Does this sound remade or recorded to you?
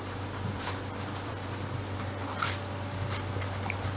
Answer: remade